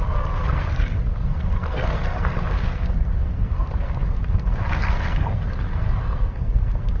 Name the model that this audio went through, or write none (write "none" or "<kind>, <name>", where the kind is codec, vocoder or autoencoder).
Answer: codec, SNAC